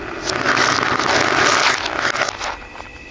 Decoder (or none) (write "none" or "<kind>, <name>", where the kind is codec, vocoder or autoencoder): none